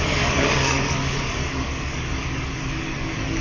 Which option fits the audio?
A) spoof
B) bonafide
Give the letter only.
A